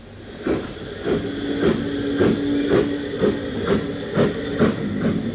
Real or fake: real